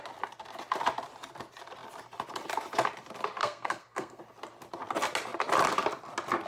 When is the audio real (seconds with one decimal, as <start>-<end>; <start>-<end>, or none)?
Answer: 0.0-3.4; 4.2-6.5